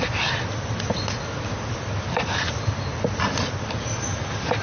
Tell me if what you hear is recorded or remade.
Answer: recorded